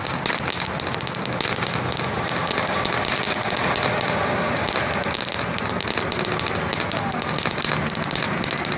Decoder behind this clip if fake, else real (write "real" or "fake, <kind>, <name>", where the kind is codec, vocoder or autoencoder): real